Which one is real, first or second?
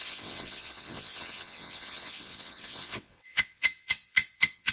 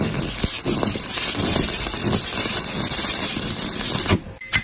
second